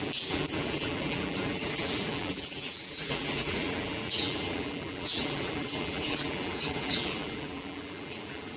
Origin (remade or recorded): remade